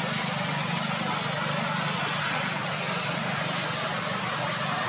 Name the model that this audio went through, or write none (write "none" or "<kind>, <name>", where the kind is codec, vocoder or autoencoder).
none